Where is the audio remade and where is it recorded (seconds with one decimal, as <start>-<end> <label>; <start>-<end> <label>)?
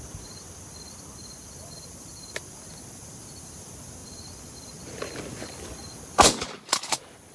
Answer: 0.0-7.3 recorded